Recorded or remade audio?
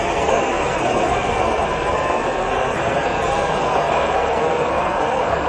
remade